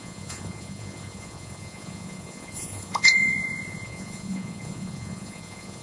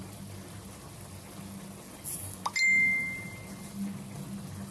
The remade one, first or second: first